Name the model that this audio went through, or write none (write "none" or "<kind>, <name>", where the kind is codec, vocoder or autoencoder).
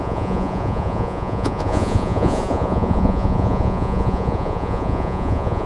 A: vocoder, Vocos